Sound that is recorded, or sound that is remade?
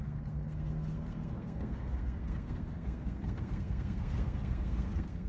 remade